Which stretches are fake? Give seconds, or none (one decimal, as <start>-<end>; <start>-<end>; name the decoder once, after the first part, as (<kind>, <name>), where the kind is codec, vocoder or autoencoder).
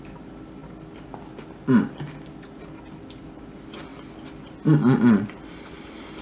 none